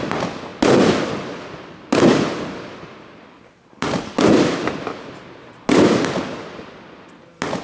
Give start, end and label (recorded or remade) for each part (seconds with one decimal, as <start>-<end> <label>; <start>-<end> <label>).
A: 0.0-7.6 recorded